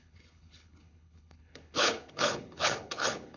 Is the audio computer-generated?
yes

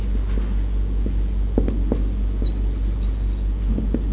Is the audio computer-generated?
no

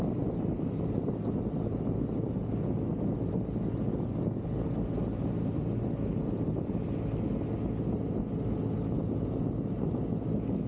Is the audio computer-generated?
no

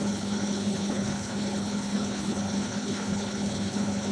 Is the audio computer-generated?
yes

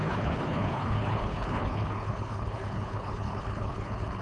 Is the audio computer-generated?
yes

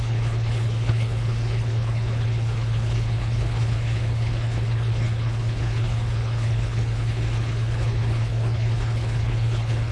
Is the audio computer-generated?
yes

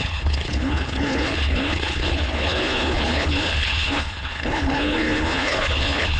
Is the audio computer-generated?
yes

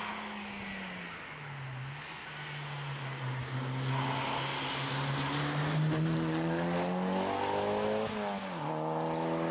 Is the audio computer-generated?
no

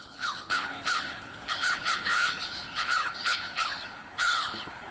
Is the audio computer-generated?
yes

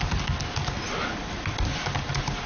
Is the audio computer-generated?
no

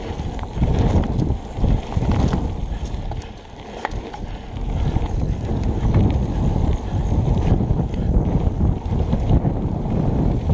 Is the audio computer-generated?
no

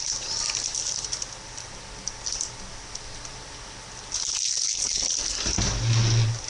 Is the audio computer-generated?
no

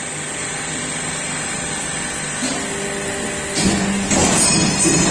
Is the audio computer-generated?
no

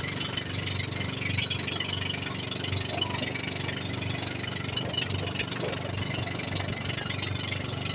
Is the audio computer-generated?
no